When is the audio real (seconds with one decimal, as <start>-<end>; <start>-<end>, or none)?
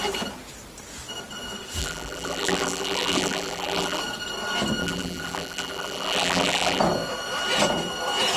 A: 0.0-1.8; 4.0-4.8; 6.8-8.4